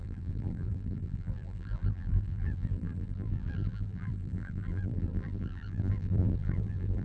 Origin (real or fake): fake